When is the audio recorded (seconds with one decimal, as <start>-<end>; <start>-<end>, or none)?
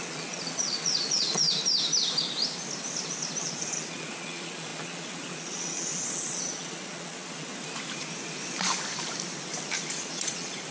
1.4-3.4; 7.5-10.1